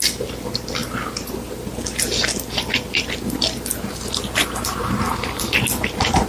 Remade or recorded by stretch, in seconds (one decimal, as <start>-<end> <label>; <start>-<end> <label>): 0.0-6.3 recorded